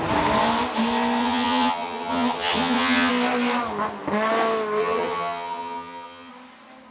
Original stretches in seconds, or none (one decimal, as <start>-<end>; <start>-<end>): 0.0-1.2; 3.1-4.8; 6.3-6.9